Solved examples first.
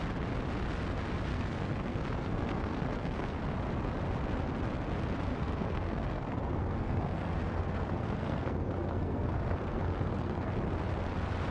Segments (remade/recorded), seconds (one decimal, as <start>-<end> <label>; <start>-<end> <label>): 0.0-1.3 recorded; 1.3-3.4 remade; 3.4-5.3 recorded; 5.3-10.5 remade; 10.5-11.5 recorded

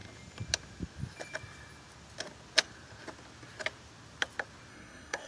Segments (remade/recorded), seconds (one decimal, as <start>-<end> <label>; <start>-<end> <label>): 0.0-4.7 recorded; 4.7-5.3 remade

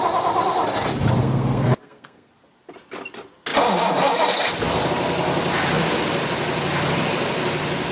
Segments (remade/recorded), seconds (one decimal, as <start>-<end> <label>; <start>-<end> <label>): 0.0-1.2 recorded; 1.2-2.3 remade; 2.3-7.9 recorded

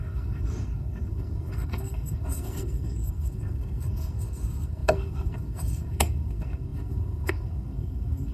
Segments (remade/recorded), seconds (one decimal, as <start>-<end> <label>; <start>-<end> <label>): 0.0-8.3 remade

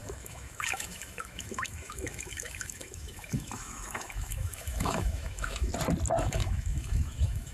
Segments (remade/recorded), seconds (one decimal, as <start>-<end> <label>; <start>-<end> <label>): 0.0-5.7 remade; 5.7-6.2 recorded; 6.2-7.5 remade

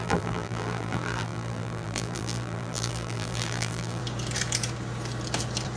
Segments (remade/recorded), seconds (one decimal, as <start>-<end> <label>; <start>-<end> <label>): 0.0-4.0 remade; 4.0-5.8 recorded